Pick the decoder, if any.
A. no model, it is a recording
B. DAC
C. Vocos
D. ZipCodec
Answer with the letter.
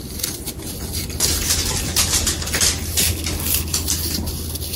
A